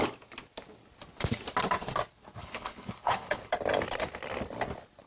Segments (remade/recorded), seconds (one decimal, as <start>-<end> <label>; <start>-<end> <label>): 0.0-2.4 recorded; 2.4-3.5 remade; 3.5-5.1 recorded